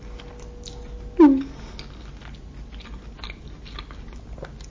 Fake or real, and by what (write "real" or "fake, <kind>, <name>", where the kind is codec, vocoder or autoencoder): real